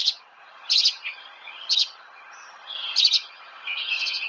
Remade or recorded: remade